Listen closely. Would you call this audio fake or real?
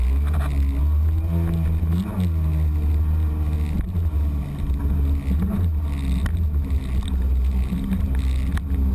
real